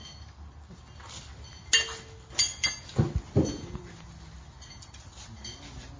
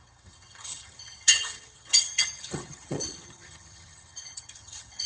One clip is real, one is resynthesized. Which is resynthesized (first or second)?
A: second